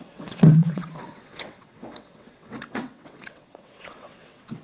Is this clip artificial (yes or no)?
yes